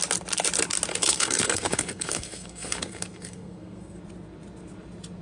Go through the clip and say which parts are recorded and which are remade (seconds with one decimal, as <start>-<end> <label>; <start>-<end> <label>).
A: 0.0-0.9 recorded; 0.9-4.0 remade; 4.0-5.2 recorded